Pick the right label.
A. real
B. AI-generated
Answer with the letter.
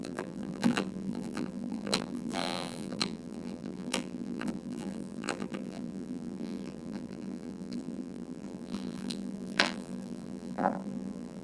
B